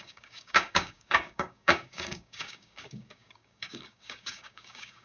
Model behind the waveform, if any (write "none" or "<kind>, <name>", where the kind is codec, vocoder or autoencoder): codec, DAC